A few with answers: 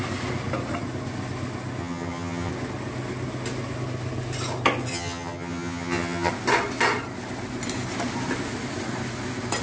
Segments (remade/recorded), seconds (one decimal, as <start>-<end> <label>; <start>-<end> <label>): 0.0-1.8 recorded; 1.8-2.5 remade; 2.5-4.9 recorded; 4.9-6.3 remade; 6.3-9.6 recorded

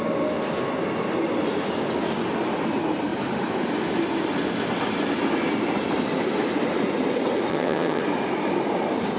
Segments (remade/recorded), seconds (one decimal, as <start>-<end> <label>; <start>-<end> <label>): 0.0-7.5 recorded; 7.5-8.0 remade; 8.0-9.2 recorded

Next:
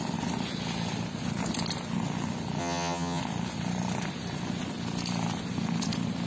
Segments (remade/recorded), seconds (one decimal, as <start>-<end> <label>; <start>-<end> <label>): 0.0-2.6 recorded; 2.6-3.2 remade; 3.2-6.3 recorded

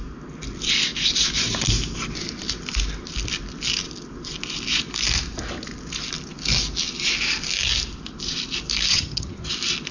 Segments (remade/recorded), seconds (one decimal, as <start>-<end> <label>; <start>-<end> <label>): 0.0-8.9 recorded; 8.9-9.5 remade; 9.5-9.9 recorded